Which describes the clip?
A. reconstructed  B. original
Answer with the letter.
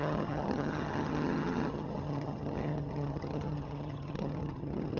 A